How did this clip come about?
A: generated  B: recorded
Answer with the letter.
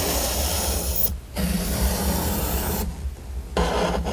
B